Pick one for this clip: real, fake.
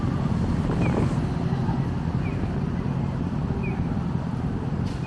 real